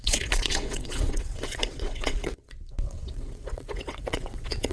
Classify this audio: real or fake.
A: fake